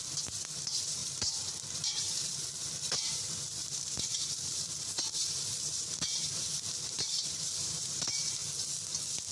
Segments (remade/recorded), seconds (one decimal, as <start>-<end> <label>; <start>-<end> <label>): 0.0-8.4 remade; 8.4-9.3 recorded